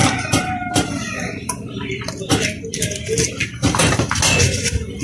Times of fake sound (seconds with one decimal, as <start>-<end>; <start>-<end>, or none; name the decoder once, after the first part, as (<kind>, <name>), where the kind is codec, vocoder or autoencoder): 0.0-2.0 (vocoder, BigVGAN v2); 3.4-4.1